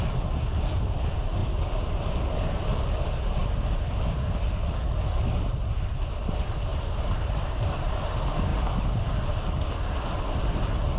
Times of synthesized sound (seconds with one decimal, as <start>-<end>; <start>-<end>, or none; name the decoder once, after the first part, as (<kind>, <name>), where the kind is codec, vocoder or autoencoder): 6.7-8.0 (vocoder, BigVGAN v2)